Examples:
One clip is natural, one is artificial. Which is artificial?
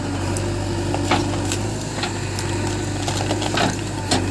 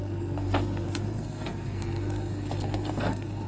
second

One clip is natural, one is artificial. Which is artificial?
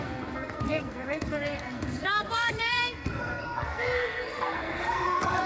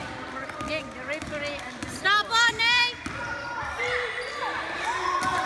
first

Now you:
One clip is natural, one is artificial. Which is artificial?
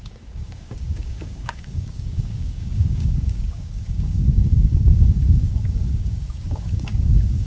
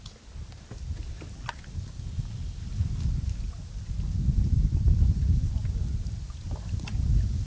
first